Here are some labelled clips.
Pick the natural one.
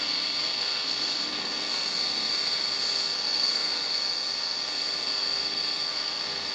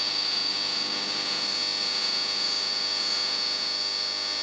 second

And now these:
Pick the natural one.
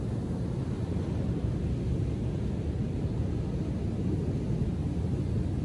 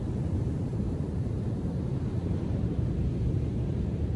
first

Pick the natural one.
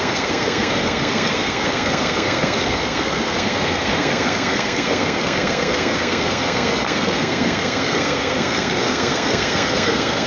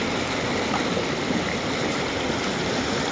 second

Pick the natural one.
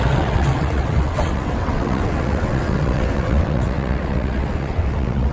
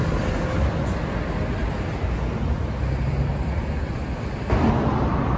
second